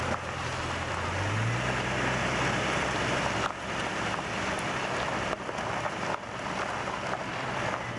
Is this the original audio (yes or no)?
yes